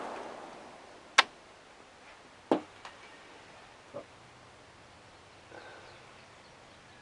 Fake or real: real